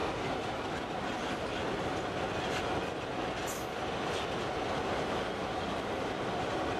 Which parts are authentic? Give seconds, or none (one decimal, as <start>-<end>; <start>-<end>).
0.0-6.8